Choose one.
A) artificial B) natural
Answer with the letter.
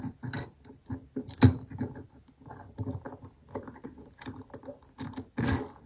B